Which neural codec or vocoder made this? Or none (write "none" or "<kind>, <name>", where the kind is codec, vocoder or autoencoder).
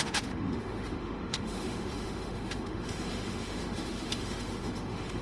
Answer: autoencoder, DAC-VAE